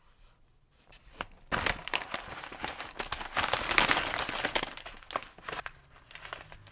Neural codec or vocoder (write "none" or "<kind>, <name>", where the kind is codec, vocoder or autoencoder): none